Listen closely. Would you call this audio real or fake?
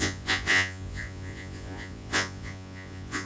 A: fake